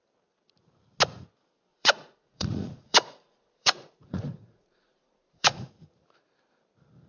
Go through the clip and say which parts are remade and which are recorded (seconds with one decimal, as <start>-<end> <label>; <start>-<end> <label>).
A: 0.0-1.7 recorded; 1.7-5.7 remade; 5.7-7.1 recorded

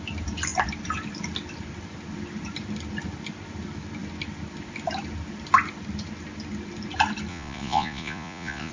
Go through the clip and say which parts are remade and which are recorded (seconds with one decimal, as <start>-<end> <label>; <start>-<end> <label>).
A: 0.0-7.3 recorded; 7.3-8.7 remade